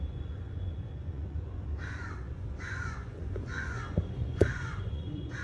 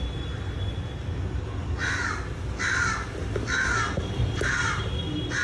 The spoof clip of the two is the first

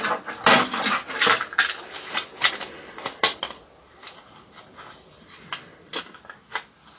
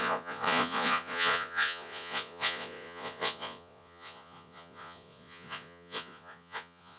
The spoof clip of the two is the second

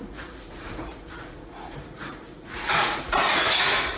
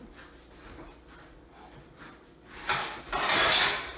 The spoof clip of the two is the first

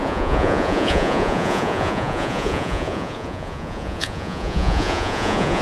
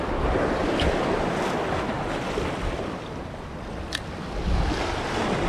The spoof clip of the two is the first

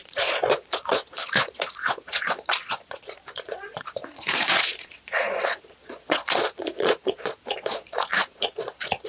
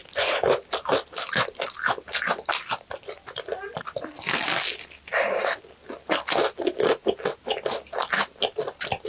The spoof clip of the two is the first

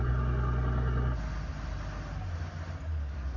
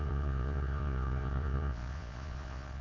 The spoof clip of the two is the second